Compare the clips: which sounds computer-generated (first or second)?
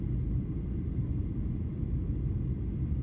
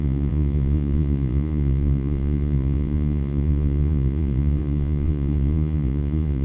second